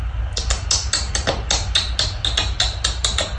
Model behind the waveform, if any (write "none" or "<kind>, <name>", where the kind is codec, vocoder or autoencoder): none